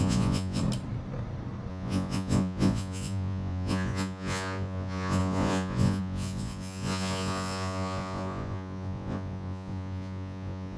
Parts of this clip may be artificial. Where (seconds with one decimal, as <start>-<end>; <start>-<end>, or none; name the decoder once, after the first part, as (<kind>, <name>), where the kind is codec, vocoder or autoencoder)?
0.0-0.6 (vocoder, Vocos); 1.7-10.8